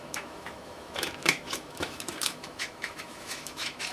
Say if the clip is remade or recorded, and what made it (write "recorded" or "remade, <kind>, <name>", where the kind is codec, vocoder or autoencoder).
remade, autoencoder, DAC-VAE